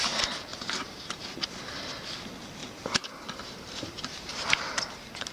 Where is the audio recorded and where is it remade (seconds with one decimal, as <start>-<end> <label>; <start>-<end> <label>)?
0.0-0.5 recorded; 0.5-1.4 remade; 1.4-2.6 recorded; 2.6-5.3 remade